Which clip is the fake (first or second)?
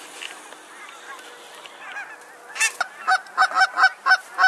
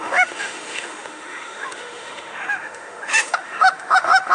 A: second